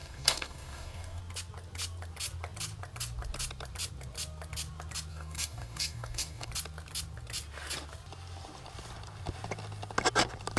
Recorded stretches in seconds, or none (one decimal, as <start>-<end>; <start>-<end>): 1.2-5.1; 6.5-10.6